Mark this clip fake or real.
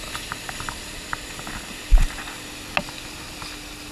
real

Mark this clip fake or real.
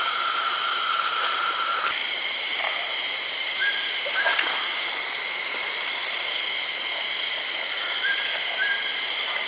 fake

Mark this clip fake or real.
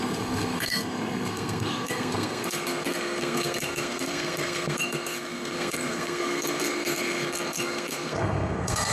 fake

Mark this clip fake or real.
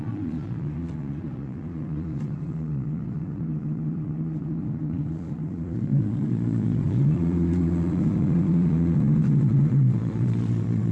fake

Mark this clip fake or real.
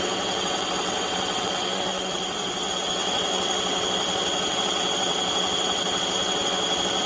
fake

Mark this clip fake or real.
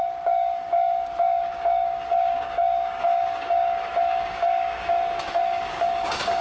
fake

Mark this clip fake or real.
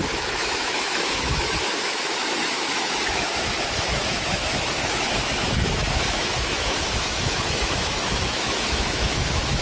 fake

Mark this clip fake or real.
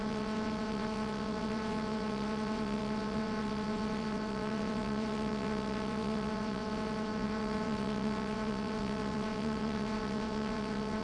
fake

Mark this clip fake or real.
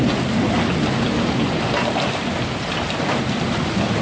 real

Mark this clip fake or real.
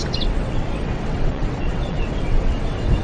fake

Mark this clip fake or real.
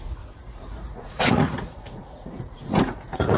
fake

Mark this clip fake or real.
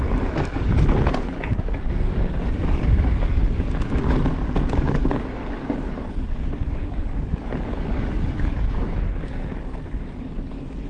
fake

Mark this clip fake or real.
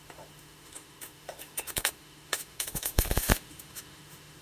fake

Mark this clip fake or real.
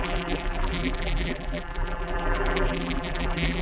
fake